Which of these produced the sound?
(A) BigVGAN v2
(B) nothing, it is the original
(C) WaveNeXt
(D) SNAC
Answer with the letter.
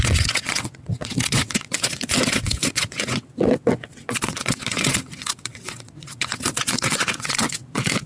C